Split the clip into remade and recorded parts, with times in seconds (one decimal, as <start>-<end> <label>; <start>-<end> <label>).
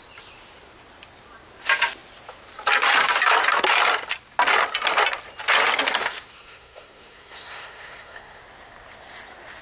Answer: 0.0-6.0 recorded; 6.0-8.4 remade; 8.4-9.6 recorded